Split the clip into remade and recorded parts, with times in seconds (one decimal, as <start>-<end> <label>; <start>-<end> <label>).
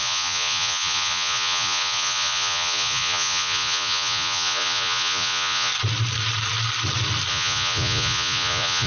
0.0-5.7 remade; 5.7-7.3 recorded; 7.3-8.9 remade